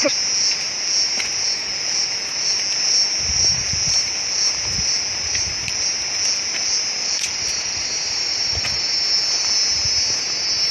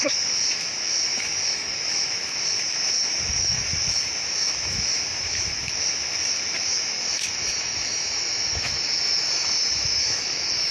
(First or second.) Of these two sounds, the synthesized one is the second